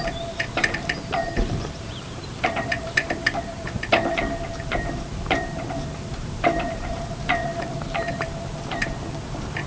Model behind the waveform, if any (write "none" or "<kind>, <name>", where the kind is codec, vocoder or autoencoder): vocoder, BigVGAN v2